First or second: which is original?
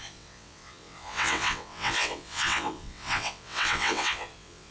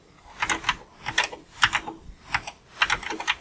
second